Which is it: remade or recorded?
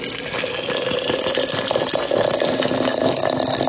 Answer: recorded